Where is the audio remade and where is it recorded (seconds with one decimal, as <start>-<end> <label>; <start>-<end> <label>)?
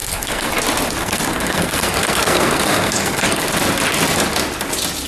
0.0-0.5 remade; 0.5-1.0 recorded; 1.0-3.4 remade; 3.4-5.1 recorded